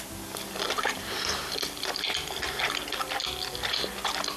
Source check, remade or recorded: recorded